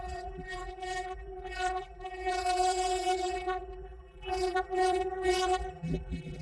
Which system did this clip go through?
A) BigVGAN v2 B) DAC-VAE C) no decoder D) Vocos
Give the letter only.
A